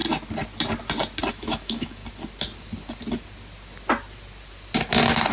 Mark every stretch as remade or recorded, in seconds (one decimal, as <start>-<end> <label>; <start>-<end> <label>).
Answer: 0.0-1.3 recorded; 1.3-2.0 remade; 2.0-5.3 recorded